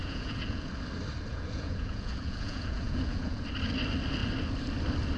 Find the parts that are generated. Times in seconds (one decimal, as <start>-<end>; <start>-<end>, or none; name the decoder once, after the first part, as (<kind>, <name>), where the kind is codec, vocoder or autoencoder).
0.0-0.7 (vocoder, Vocos); 1.3-3.4